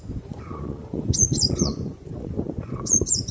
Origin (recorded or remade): remade